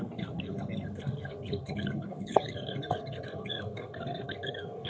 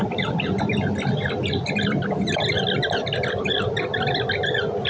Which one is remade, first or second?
first